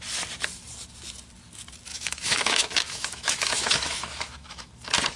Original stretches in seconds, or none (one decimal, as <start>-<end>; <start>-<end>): 0.0-1.9; 4.7-5.2